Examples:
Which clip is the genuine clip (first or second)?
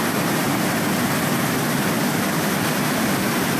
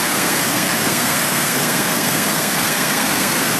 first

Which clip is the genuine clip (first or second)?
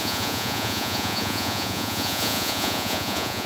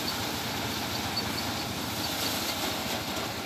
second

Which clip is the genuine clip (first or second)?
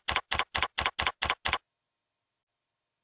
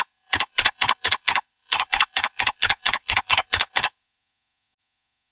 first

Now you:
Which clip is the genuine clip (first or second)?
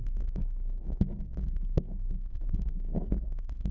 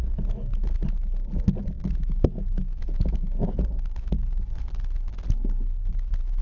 second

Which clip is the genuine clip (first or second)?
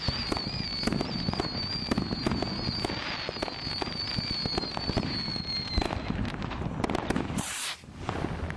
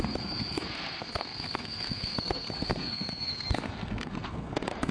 first